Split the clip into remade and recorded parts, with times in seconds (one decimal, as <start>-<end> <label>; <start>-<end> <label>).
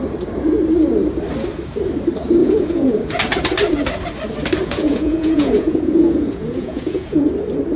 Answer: 0.0-2.4 recorded; 2.4-3.2 remade; 3.2-4.6 recorded; 4.6-7.3 remade; 7.3-7.8 recorded